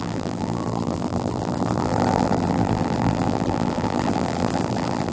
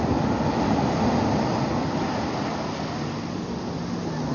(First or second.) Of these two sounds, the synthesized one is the first